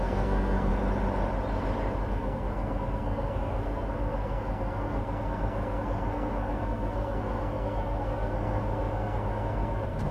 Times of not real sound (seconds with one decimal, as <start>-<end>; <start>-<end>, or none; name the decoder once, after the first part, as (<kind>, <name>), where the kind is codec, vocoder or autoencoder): 0.0-0.7 (codec, SNAC); 2.1-10.1